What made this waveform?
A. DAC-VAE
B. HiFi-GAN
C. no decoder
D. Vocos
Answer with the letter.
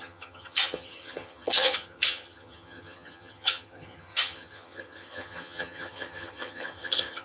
B